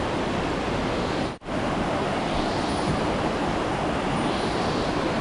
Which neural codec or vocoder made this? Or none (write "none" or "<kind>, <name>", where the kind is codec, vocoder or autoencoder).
none